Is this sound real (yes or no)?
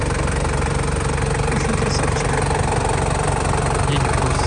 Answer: yes